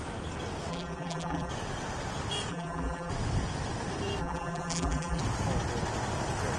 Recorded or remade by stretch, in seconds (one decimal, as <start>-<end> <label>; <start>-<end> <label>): 0.0-0.7 recorded; 0.7-1.5 remade; 1.5-2.5 recorded; 2.5-3.1 remade; 3.1-4.2 recorded; 4.2-5.2 remade; 5.2-6.6 recorded

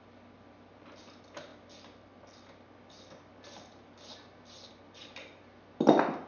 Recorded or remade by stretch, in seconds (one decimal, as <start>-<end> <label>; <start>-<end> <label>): 0.0-6.3 recorded

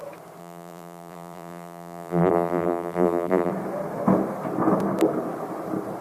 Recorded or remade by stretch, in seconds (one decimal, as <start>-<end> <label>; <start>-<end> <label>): 0.0-0.4 recorded; 0.4-3.5 remade; 3.5-6.0 recorded

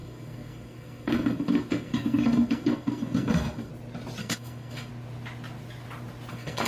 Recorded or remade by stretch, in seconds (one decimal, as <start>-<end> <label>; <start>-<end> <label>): 0.0-3.7 remade; 3.7-4.2 recorded; 4.2-4.9 remade; 4.9-6.3 recorded; 6.3-6.7 remade

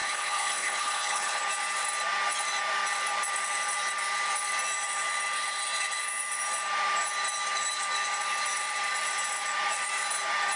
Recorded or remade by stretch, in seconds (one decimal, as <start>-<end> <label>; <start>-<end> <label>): 0.0-1.4 remade; 1.4-10.6 recorded

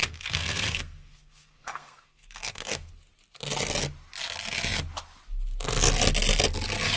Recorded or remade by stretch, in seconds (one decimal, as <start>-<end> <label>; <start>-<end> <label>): 0.0-2.9 remade; 2.9-7.0 recorded

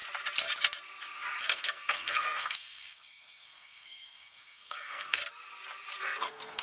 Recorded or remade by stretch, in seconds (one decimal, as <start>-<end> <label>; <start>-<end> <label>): 0.0-1.4 recorded; 1.4-5.2 remade; 5.2-6.0 recorded; 6.0-6.6 remade